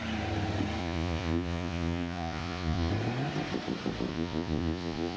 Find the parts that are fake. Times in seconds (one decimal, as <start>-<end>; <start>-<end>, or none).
0.8-2.9; 4.1-5.2

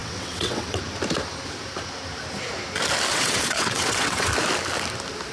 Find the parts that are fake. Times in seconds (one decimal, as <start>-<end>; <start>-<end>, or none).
0.0-0.8; 3.1-4.3

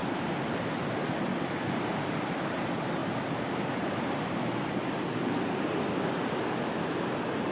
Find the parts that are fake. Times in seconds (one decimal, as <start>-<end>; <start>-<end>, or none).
0.0-0.7; 1.3-2.6; 3.0-4.0